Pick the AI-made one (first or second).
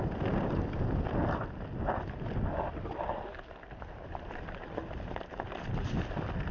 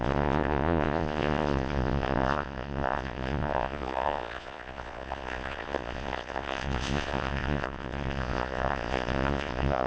second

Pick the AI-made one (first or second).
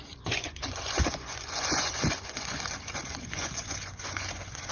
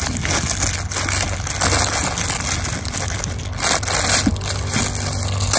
first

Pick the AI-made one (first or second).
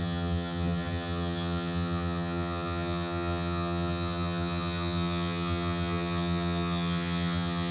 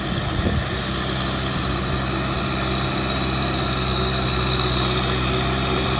first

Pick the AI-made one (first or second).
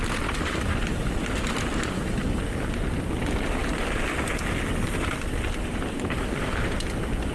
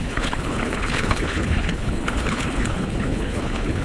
second